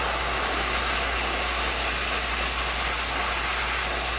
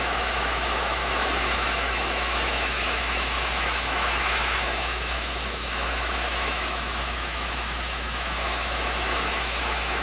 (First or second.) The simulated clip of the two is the second